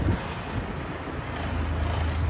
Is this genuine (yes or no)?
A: yes